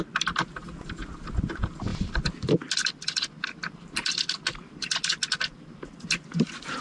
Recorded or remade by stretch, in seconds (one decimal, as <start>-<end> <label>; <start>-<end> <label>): 0.0-6.8 recorded